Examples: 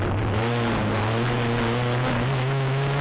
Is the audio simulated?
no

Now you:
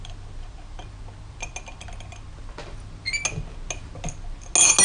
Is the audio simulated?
no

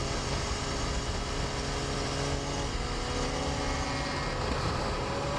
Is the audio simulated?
no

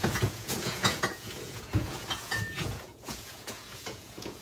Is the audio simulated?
yes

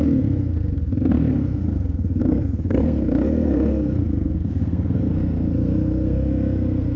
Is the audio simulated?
yes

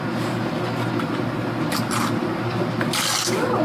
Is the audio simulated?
no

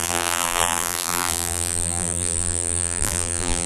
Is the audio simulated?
yes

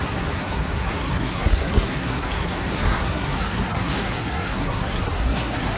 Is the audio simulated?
yes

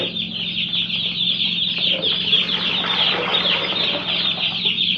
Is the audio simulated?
no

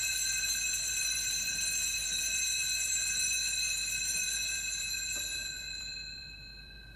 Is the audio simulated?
yes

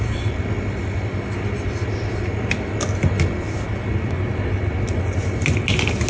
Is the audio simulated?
no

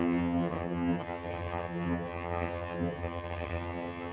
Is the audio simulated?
yes